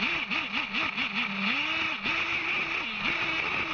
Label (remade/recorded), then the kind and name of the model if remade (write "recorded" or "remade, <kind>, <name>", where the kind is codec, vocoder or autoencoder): recorded